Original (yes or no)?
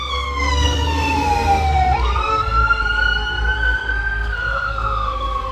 no